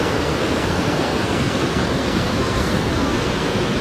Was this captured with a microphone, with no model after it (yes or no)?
no